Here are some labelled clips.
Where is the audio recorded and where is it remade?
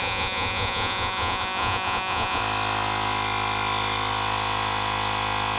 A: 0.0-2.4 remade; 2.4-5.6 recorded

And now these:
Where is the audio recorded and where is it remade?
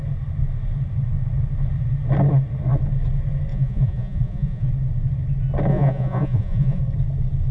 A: 0.0-3.5 recorded; 3.5-4.7 remade; 4.7-5.7 recorded; 5.7-6.8 remade; 6.8-7.5 recorded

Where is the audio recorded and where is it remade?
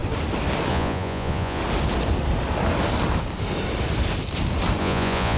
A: 0.0-0.7 recorded; 0.7-1.6 remade; 1.6-4.8 recorded; 4.8-5.4 remade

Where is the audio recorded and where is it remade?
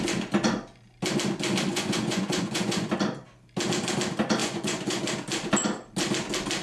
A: 0.0-1.7 recorded; 1.7-2.9 remade; 2.9-4.4 recorded; 4.4-5.0 remade; 5.0-6.6 recorded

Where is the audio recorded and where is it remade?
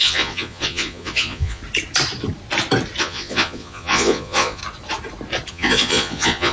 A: 0.0-1.6 remade; 1.6-3.0 recorded; 3.0-4.6 remade; 4.6-5.5 recorded; 5.5-6.5 remade